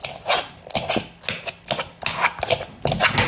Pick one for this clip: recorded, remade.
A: recorded